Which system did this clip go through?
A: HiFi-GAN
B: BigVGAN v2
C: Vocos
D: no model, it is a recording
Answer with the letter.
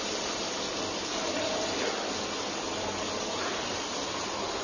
D